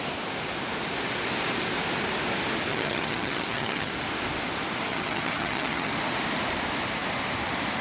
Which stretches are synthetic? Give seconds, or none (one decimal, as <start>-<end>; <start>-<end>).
2.7-3.9; 4.9-5.9